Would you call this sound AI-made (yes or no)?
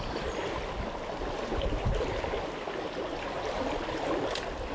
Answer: no